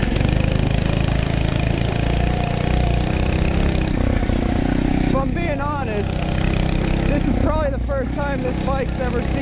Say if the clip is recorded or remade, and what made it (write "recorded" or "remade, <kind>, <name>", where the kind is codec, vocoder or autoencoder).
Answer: recorded